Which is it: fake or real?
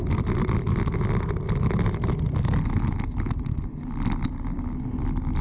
real